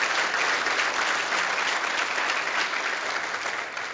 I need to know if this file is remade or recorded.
recorded